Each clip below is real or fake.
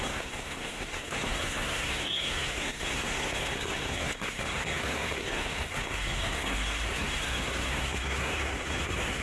fake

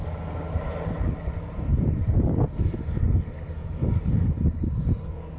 real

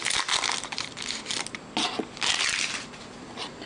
real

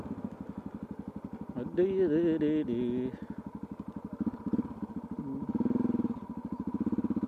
real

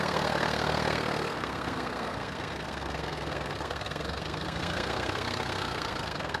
fake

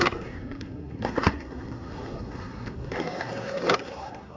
fake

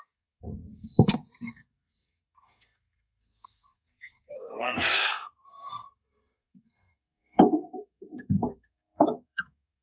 fake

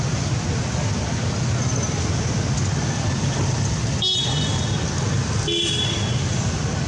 real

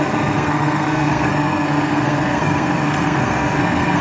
fake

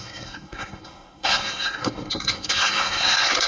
fake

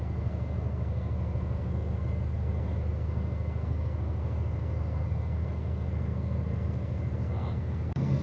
fake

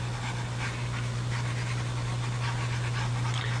real